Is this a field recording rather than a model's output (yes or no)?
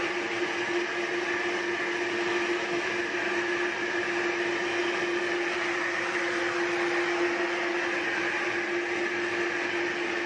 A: no